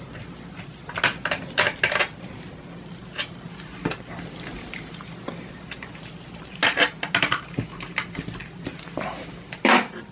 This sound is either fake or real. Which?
real